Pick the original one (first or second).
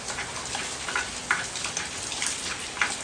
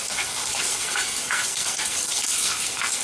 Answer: first